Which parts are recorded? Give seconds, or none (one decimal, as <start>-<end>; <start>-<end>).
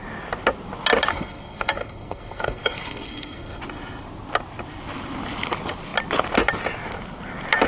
0.0-1.1; 3.6-7.7